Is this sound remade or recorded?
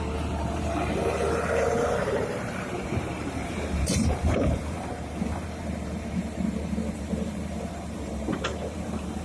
remade